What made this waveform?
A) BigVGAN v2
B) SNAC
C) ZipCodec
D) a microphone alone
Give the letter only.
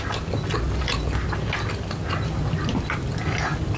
D